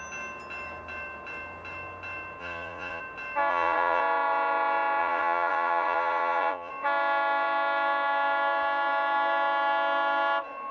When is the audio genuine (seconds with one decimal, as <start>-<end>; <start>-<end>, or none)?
0.0-2.4; 3.0-3.5; 4.0-5.0; 6.7-10.7